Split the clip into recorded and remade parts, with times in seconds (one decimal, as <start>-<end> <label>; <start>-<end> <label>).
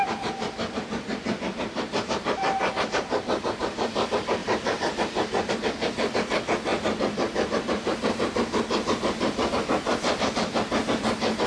0.0-11.5 remade